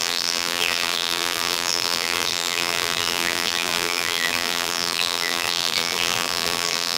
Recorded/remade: remade